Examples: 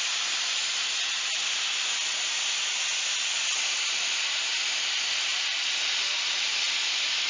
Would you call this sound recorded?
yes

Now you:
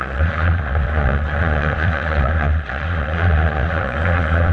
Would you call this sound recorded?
no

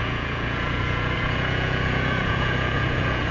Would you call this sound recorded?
no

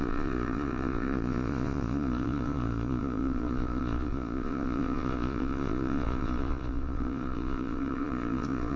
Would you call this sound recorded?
no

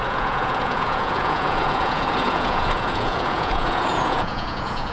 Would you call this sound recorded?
no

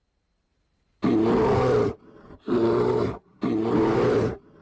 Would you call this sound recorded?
yes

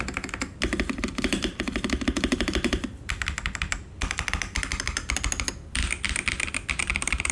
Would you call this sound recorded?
yes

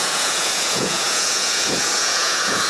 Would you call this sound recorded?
no